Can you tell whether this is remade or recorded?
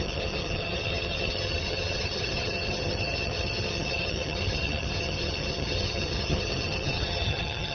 remade